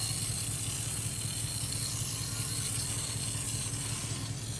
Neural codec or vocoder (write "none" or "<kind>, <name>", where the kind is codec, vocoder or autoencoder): none